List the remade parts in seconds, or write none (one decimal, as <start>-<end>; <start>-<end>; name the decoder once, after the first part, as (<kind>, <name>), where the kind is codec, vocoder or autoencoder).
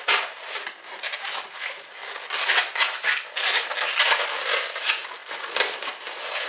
0.0-2.0 (vocoder, BigVGAN v2); 4.4-6.5